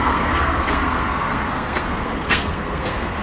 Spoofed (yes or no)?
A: yes